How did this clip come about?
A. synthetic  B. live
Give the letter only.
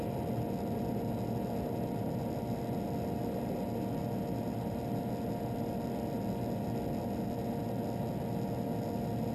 B